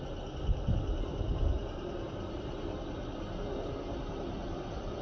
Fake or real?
real